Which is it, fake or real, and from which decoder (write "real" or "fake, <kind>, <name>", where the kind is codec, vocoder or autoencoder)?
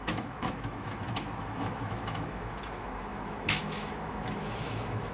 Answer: fake, autoencoder, DAC-VAE